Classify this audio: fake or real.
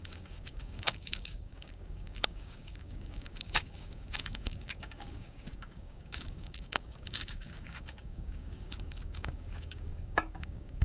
fake